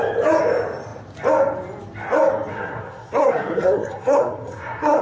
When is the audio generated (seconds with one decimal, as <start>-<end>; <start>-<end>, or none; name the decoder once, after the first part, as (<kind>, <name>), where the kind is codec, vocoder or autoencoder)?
2.5-5.0 (codec, SNAC)